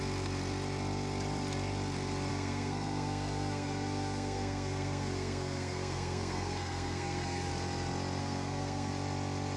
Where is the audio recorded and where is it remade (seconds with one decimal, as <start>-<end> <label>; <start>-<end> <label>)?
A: 0.0-2.3 recorded; 2.3-7.5 remade; 7.5-8.2 recorded; 8.2-8.9 remade; 8.9-9.6 recorded

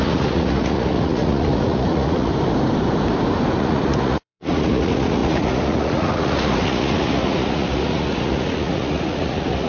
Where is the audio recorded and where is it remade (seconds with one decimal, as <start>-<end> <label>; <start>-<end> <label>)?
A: 0.0-2.3 remade; 2.3-3.6 recorded; 3.6-9.7 remade

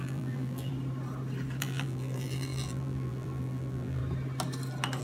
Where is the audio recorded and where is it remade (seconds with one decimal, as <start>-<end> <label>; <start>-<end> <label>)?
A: 0.0-0.7 remade; 0.7-1.6 recorded; 1.6-4.0 remade; 4.0-5.0 recorded

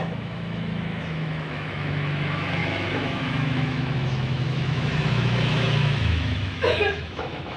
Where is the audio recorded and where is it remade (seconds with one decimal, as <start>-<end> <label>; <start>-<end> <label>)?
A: 0.0-7.6 remade

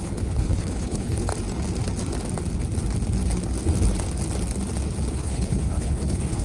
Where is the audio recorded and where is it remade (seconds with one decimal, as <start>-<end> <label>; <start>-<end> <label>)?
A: 0.0-1.3 remade; 1.3-5.1 recorded; 5.1-6.4 remade

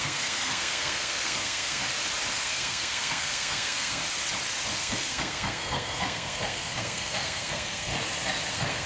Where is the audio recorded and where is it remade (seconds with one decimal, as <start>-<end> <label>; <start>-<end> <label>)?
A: 0.0-1.8 remade; 1.8-2.3 recorded; 2.3-4.0 remade; 4.0-4.8 recorded; 4.8-7.9 remade; 7.9-8.5 recorded; 8.5-8.9 remade

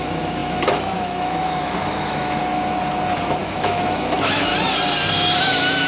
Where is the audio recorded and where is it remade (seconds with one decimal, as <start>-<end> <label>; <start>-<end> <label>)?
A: 0.0-2.4 remade; 2.4-3.4 recorded; 3.4-4.5 remade; 4.5-5.4 recorded; 5.4-5.9 remade